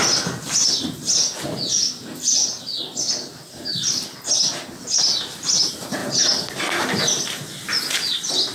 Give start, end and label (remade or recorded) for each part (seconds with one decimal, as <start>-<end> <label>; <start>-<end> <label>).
0.0-8.5 recorded